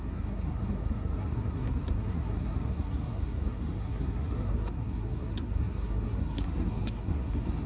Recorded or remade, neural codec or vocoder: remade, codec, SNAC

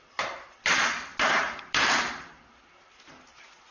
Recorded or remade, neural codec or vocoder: recorded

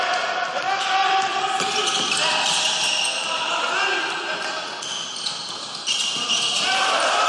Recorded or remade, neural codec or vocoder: recorded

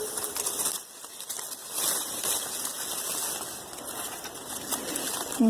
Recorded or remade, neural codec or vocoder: recorded